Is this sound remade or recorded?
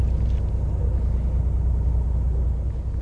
recorded